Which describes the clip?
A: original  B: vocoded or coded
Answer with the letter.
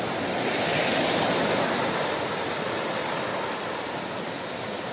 A